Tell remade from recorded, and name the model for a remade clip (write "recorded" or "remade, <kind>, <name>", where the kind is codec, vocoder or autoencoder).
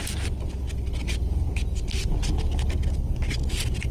recorded